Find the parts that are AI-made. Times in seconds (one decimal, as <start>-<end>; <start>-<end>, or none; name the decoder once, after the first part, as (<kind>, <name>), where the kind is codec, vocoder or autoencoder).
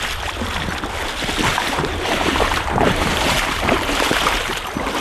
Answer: 1.5-4.5 (vocoder, BigVGAN v2)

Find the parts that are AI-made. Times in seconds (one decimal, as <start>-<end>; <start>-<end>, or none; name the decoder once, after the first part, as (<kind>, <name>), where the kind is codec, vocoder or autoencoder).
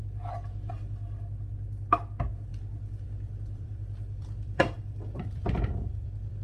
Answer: 2.5-6.4 (vocoder, BigVGAN v2)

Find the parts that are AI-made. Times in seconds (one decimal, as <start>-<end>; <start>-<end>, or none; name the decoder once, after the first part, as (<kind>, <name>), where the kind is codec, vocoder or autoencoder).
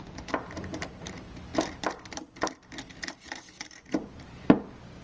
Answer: 0.0-5.0 (vocoder, BigVGAN v2)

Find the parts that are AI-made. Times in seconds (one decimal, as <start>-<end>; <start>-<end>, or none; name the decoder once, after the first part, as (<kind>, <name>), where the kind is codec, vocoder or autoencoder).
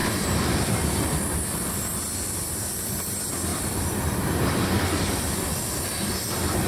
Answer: 3.5-4.3 (vocoder, BigVGAN v2)